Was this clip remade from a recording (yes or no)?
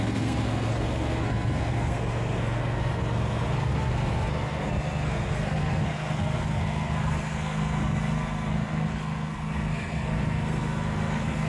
yes